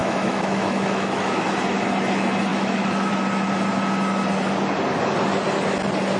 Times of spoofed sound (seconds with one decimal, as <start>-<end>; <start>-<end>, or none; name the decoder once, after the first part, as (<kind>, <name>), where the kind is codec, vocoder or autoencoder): 0.0-1.3 (autoencoder, DAC-VAE); 2.5-3.1